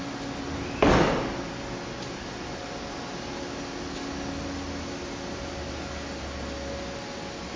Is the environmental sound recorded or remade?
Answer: recorded